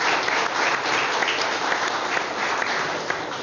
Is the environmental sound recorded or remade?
recorded